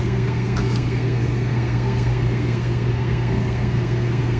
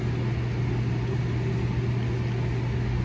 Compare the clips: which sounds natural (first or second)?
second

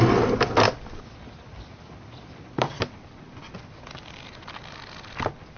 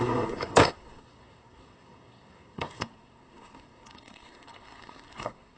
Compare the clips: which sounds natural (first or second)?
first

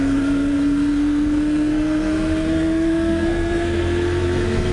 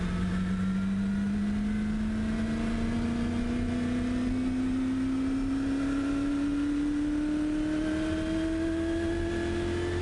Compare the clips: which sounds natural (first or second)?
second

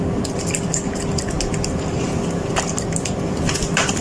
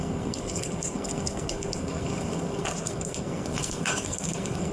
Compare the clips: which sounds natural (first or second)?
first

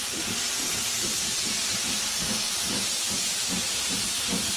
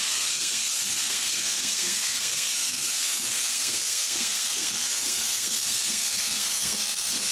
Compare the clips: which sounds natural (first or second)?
first